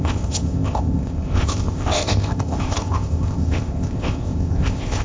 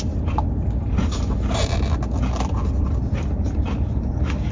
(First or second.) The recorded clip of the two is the second